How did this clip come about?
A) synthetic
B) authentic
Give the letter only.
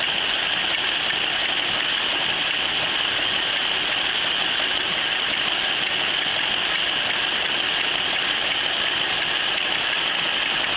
B